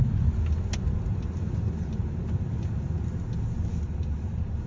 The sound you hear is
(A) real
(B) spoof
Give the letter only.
A